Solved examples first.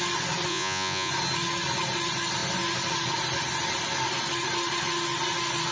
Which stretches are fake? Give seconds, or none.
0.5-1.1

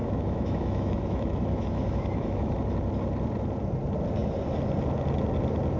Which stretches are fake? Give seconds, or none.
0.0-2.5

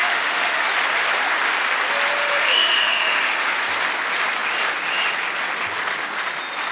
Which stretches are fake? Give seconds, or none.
0.0-0.6; 2.2-3.6

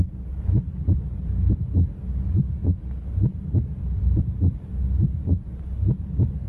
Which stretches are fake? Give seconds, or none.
none

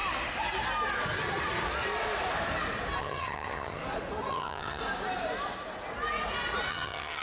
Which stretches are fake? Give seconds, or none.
3.0-3.8; 4.3-4.8; 6.7-7.2

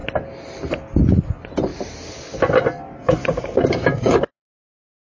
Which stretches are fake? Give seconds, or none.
3.2-5.0